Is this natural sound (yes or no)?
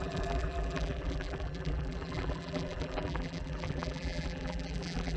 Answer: no